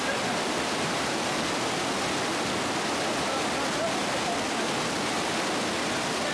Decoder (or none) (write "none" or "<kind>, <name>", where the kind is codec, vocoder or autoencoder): none